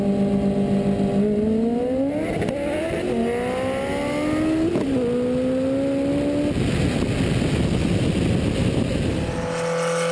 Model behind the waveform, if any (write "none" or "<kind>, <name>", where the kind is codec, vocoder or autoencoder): none